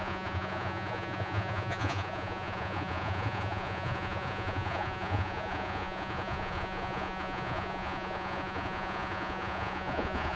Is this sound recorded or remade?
remade